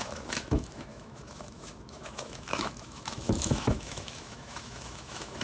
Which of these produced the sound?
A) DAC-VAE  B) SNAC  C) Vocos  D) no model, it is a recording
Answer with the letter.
A